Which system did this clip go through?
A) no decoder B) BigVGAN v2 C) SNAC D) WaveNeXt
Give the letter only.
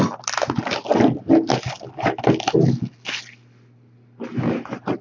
A